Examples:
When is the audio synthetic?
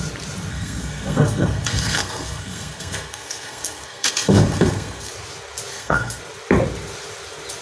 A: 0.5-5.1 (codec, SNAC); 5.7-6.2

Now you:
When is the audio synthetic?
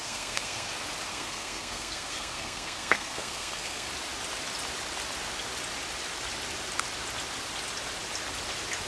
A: 0.0-0.7 (codec, SNAC); 1.1-3.9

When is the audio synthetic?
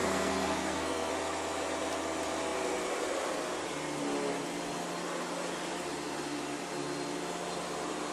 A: 0.0-1.1 (codec, SNAC)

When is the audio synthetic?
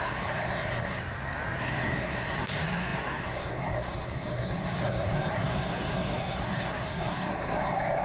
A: 0.0-1.0 (codec, SNAC); 1.6-8.0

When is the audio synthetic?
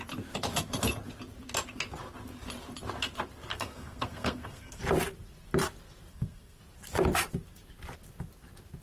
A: 3.5-4.8 (codec, SNAC); 6.1-6.6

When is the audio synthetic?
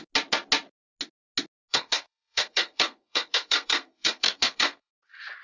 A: 1.7-4.9 (codec, SNAC)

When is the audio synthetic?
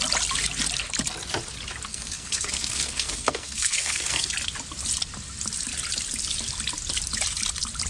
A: 1.9-4.3 (codec, SNAC)